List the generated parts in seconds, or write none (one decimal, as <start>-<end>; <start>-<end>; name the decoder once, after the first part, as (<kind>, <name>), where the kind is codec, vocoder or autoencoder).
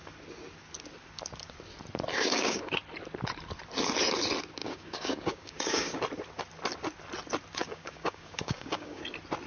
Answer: 2.1-2.7 (codec, DAC); 4.6-6.0; 7.6-9.0